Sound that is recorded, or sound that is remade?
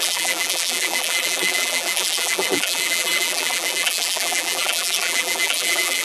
remade